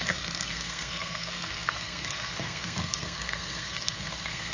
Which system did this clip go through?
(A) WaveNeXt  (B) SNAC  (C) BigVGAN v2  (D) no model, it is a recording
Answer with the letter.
B